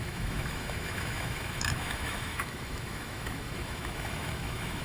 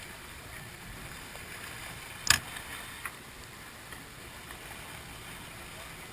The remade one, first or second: first